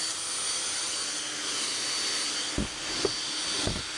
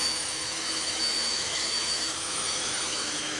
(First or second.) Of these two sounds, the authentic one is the first